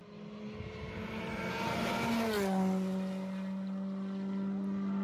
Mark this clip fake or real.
real